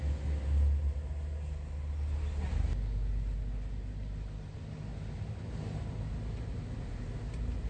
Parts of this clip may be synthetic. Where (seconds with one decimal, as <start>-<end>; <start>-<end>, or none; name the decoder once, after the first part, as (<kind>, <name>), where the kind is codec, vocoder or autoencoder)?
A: none